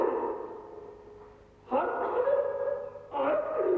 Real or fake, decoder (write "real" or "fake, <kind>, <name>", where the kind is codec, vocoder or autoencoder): real